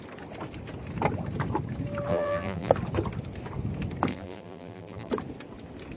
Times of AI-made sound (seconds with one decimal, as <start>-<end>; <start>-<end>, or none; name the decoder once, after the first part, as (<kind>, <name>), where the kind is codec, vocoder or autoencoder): 2.1-2.7 (vocoder, BigVGAN v2); 4.1-5.1